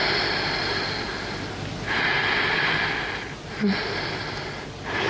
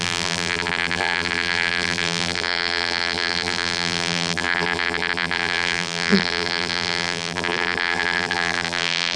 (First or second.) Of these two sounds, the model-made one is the second